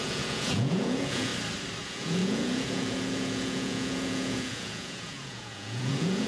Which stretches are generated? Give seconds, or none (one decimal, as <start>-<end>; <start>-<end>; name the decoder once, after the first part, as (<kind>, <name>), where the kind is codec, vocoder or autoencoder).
0.0-1.3 (vocoder, Vocos); 1.8-6.3